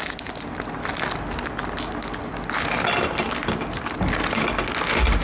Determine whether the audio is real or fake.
real